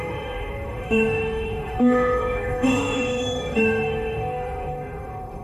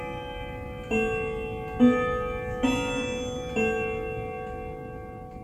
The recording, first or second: second